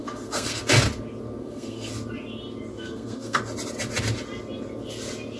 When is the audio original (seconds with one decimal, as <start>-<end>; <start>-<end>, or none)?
0.6-1.4; 1.9-2.7; 3.4-5.4